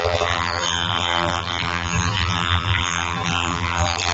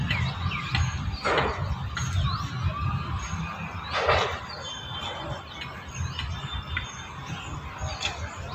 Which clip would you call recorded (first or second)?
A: second